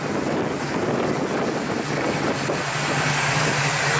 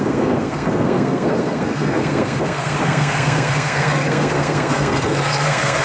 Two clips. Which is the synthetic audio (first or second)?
second